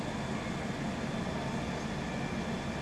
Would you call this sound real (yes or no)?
yes